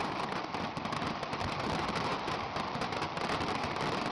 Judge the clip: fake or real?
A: real